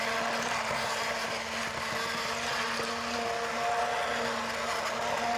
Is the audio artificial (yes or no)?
no